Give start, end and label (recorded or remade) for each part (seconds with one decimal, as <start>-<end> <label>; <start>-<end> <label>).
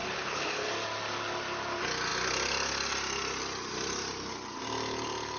0.0-0.7 remade; 0.7-5.4 recorded